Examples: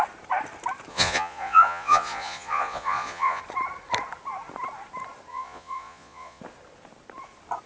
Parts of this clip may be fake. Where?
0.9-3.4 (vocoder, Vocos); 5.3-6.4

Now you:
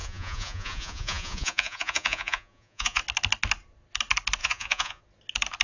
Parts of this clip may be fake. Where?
0.0-3.0 (vocoder, Vocos); 4.4-5.0

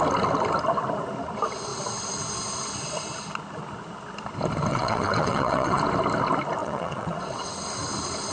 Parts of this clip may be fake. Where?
4.7-5.8 (vocoder, WaveNeXt); 6.6-7.5

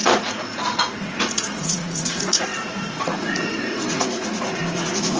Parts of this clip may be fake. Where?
0.0-5.2 (vocoder, Vocos)

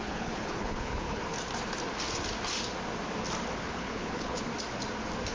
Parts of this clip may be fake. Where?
0.0-1.2 (codec, HILCodec); 3.6-4.5

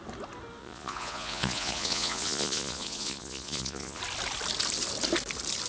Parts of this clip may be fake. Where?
0.6-4.0 (vocoder, Vocos)

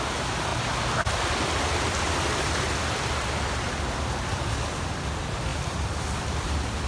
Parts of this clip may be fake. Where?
none

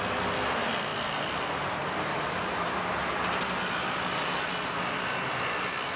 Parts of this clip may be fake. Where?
none